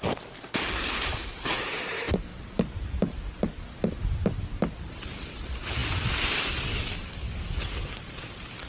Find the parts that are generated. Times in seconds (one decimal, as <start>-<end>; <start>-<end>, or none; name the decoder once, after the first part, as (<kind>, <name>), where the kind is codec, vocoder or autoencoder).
6.7-8.0 (codec, DAC)